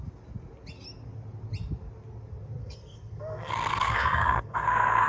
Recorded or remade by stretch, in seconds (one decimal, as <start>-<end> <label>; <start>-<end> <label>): 0.0-2.6 recorded; 2.6-5.1 remade